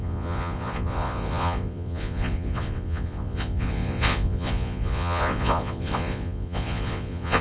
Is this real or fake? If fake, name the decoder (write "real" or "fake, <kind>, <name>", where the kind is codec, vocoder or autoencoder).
fake, vocoder, Vocos